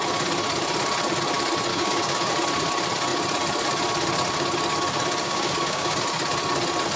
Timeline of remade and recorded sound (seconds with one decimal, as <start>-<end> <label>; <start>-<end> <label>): 0.0-1.7 recorded; 1.7-2.3 remade; 2.3-5.2 recorded; 5.2-6.0 remade; 6.0-7.0 recorded